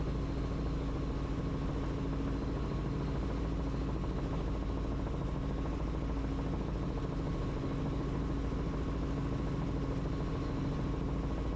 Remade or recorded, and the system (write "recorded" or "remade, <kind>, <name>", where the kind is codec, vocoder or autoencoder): recorded